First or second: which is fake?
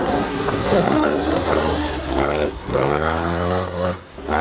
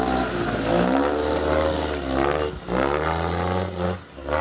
first